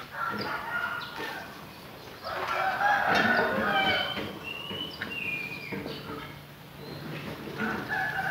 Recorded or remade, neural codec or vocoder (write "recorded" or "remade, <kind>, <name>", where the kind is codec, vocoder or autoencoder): recorded